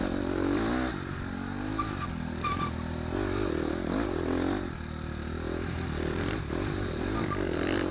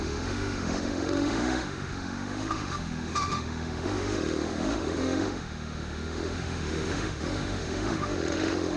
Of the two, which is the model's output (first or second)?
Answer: second